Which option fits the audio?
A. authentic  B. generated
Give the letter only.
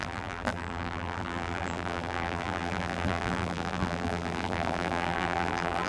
B